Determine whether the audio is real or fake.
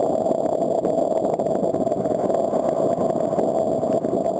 real